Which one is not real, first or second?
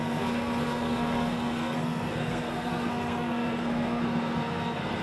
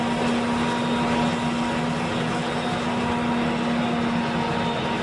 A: first